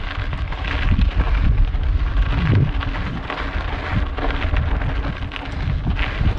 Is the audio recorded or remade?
recorded